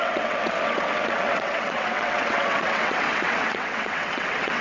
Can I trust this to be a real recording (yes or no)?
no